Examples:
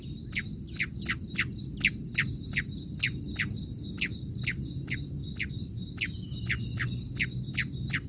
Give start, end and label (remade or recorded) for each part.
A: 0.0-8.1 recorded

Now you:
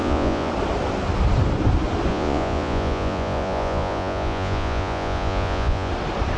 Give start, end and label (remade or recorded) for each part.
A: 0.0-0.5 remade; 0.5-2.1 recorded; 2.1-5.9 remade; 5.9-6.4 recorded

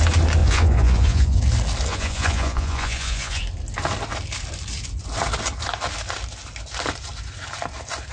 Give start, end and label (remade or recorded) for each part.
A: 0.0-0.4 recorded; 0.4-1.4 remade; 1.4-1.9 recorded; 1.9-3.4 remade; 3.4-8.1 recorded

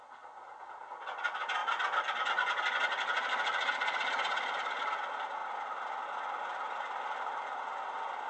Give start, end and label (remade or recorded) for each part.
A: 0.0-8.3 recorded